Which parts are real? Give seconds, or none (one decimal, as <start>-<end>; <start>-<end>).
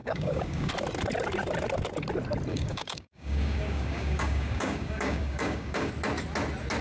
0.7-2.5; 5.9-6.8